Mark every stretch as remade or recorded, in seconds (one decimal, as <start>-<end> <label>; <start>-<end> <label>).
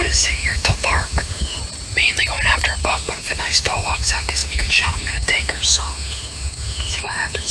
0.0-1.6 remade; 1.6-2.8 recorded; 2.8-7.5 remade